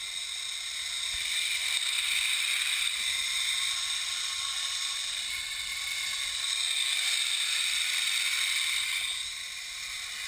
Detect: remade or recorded recorded